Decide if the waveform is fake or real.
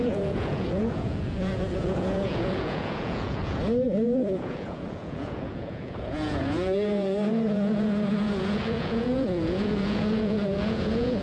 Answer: fake